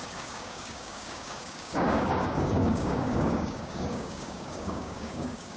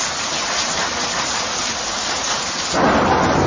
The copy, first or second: first